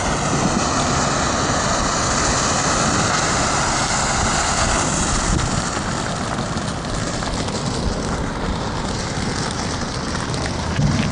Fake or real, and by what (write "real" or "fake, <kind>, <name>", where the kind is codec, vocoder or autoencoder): real